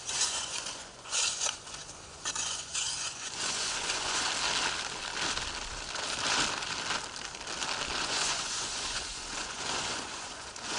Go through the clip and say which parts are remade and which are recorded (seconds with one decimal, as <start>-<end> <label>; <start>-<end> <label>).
0.0-4.3 remade; 4.3-8.0 recorded; 8.0-10.8 remade